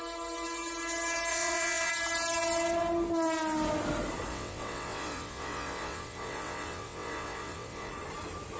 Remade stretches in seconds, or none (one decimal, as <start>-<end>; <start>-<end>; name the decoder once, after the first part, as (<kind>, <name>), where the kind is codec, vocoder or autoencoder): 1.3-1.9 (vocoder, WaveNeXt); 4.3-7.9